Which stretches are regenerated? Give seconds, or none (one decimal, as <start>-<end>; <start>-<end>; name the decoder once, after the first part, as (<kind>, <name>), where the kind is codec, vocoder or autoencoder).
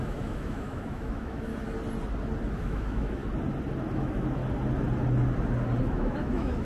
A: 0.0-1.5 (autoencoder, DAC-VAE); 2.6-3.2; 3.9-4.4; 5.8-6.6